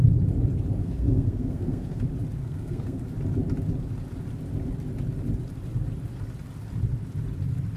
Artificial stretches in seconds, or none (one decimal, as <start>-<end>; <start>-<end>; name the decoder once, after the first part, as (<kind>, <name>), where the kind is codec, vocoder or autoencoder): 0.8-2.0 (codec, SNAC); 2.4-3.0